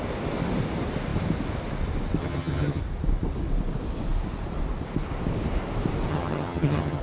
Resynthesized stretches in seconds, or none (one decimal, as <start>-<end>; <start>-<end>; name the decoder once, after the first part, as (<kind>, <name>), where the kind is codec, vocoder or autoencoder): 2.2-2.8 (vocoder, HiFi-GAN); 6.1-7.0